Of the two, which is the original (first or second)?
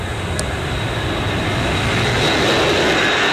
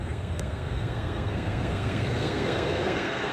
first